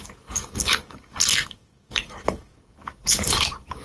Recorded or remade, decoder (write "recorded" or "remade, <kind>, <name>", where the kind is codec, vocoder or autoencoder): remade, codec, DAC